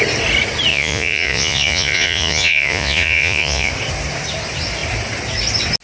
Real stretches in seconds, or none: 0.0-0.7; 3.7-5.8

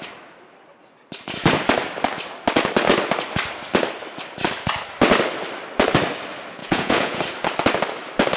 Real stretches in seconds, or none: 0.0-6.6; 7.2-8.4

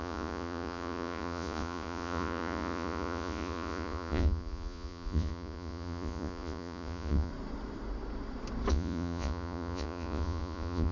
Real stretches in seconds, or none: 7.3-8.7